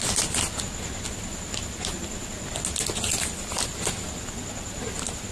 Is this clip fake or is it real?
real